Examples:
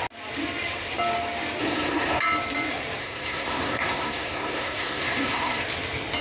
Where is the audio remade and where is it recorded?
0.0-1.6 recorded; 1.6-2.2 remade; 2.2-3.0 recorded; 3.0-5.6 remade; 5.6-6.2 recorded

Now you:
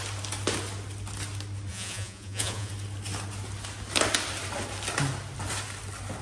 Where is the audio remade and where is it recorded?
0.0-1.7 recorded; 1.7-2.7 remade; 2.7-6.2 recorded